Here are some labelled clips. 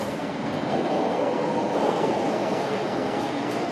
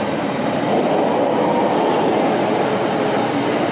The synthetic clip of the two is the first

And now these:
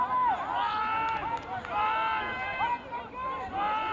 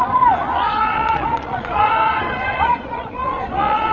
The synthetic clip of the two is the second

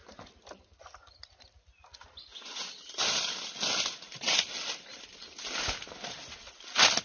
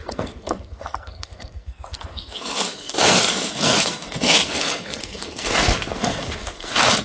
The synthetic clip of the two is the second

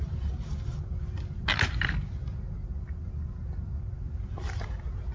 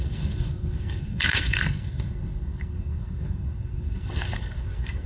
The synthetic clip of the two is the second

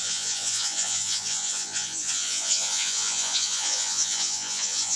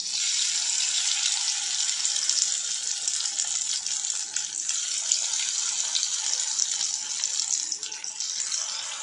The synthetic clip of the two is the first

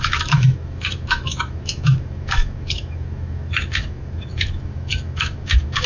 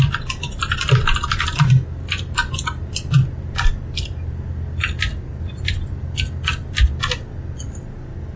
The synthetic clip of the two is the first